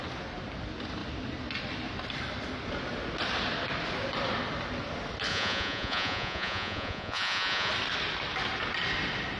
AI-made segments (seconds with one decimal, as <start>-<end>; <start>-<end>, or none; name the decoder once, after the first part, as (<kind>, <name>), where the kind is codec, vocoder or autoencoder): 5.3-7.7 (vocoder, Vocos)